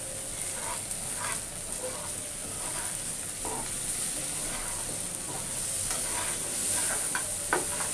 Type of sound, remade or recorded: recorded